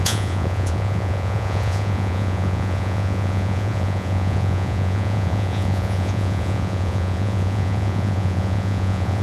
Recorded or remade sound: remade